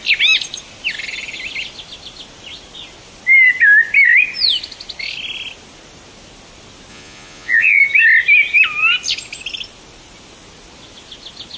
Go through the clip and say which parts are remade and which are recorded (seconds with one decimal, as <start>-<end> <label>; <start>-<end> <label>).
0.0-6.9 recorded; 6.9-7.8 remade; 7.8-11.6 recorded